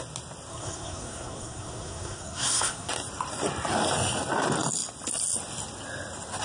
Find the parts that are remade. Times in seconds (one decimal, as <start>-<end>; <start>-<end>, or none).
0.5-2.9